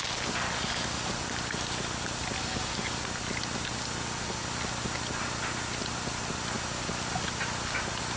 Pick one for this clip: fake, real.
real